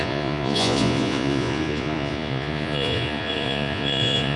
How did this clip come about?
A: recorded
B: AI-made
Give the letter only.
B